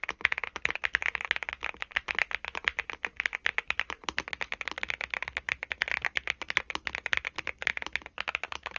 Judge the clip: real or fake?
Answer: real